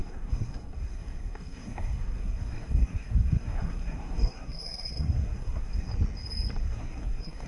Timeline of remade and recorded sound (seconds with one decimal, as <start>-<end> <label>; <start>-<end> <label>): 0.0-5.9 remade; 5.9-6.6 recorded; 6.6-7.5 remade